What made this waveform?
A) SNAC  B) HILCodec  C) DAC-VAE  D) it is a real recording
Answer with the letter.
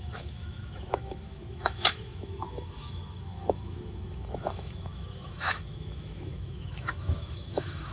C